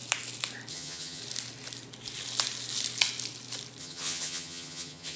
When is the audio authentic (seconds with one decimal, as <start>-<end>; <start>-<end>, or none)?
0.0-0.7; 1.2-3.8